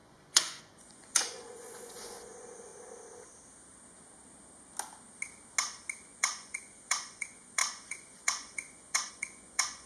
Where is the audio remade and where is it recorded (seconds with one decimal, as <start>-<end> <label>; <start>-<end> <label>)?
0.0-2.7 remade; 2.7-6.2 recorded; 6.2-9.9 remade